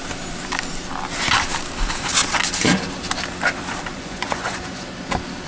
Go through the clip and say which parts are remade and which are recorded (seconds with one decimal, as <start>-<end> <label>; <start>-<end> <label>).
0.0-3.9 recorded; 3.9-4.9 remade; 4.9-5.5 recorded